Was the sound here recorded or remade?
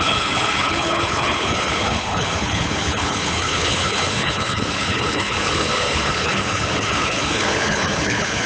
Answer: remade